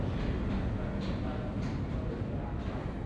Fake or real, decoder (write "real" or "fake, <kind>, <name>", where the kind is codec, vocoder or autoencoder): real